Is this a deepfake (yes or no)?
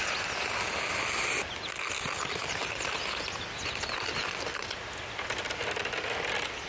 no